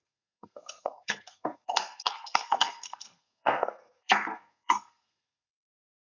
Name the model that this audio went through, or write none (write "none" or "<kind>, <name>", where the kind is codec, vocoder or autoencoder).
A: codec, SNAC